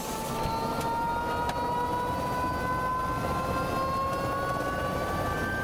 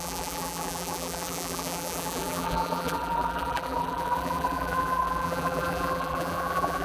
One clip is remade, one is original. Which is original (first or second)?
first